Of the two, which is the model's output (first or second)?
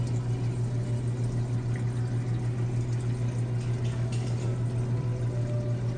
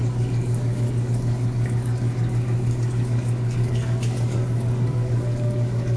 second